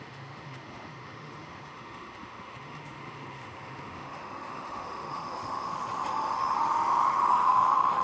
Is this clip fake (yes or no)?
yes